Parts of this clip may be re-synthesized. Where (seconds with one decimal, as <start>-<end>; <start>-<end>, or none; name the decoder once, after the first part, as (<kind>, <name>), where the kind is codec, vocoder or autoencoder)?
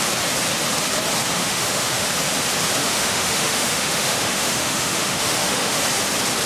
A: 1.4-2.1 (autoencoder, DAC-VAE); 2.8-5.8